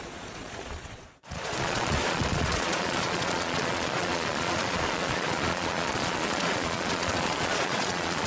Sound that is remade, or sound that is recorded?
remade